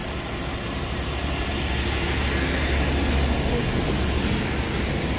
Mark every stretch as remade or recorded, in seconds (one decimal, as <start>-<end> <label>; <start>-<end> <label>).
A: 0.0-5.2 recorded